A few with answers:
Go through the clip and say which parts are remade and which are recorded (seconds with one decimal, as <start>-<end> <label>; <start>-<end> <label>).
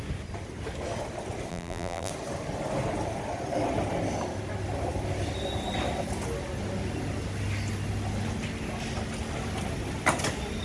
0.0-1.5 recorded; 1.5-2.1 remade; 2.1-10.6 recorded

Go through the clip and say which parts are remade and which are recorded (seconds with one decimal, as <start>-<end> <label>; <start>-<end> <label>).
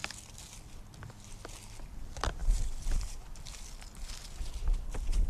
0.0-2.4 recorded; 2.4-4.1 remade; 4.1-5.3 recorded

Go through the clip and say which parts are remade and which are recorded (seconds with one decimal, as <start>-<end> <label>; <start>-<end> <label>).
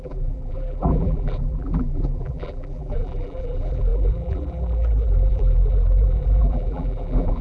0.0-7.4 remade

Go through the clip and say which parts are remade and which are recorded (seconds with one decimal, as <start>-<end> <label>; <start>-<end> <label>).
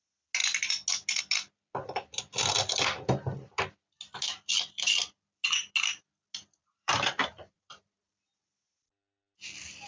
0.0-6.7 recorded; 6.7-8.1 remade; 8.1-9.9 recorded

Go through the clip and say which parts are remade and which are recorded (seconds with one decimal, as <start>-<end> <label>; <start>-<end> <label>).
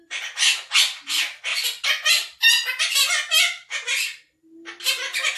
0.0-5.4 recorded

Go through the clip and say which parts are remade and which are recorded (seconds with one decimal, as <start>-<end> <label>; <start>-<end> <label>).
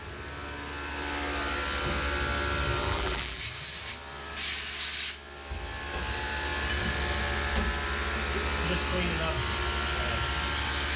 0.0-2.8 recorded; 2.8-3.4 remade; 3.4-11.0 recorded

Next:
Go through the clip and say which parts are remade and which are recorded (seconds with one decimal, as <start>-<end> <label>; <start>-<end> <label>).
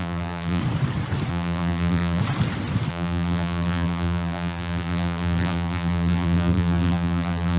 0.0-0.6 remade; 0.6-1.3 recorded; 1.3-2.2 remade; 2.2-2.9 recorded; 2.9-7.6 remade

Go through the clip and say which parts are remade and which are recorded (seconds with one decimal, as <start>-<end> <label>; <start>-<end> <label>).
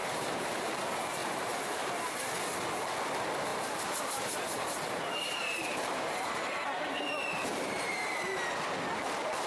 0.0-0.6 remade; 0.6-1.2 recorded; 1.2-1.8 remade; 1.8-3.5 recorded; 3.5-8.1 remade; 8.1-9.5 recorded